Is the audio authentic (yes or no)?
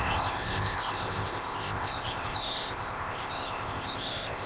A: no